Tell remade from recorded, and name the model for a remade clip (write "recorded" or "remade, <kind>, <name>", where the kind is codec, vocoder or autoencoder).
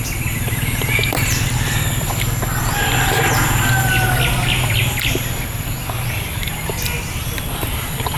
recorded